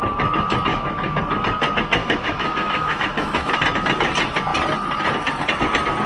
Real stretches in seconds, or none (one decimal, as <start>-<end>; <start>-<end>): 0.0-0.7; 1.2-2.0; 3.5-6.1